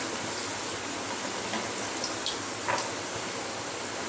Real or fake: real